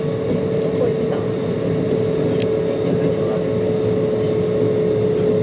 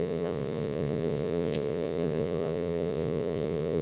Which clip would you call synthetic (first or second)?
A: second